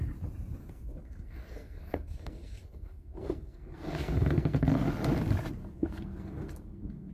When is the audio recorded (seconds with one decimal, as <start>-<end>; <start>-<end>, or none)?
0.0-0.6; 4.9-5.6